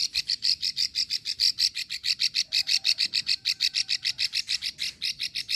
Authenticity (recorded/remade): remade